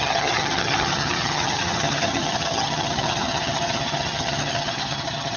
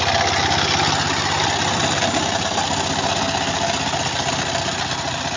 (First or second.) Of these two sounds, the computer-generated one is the first